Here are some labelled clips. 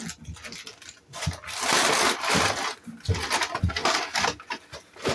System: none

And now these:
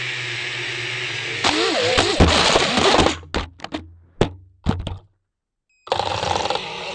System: none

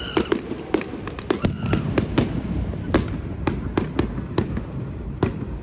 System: none